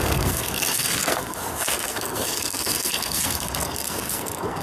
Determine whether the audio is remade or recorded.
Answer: remade